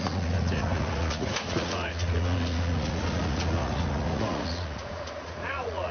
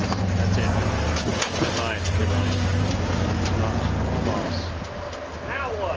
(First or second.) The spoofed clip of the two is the first